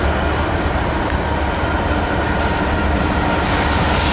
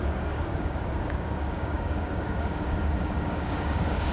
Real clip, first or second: first